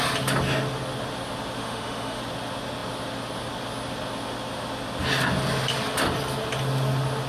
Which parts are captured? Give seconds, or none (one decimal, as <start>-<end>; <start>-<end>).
0.0-1.6; 2.2-7.3